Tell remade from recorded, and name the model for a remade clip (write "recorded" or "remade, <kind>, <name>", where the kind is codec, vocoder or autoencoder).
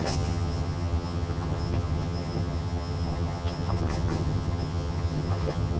remade, vocoder, HiFi-GAN